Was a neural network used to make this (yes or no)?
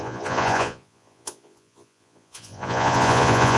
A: yes